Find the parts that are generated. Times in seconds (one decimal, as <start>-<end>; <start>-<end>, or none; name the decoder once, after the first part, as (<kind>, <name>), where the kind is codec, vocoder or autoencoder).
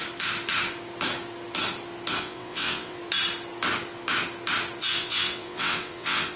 2.2-3.0 (vocoder, WaveNeXt); 4.8-6.4